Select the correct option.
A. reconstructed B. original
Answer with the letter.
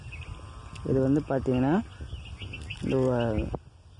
B